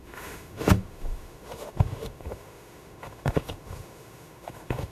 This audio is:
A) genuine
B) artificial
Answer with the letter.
B